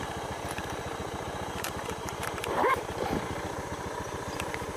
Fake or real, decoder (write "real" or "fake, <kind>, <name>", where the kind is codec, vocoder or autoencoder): fake, vocoder, BigVGAN v2